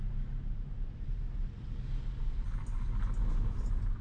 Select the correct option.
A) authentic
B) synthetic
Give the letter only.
A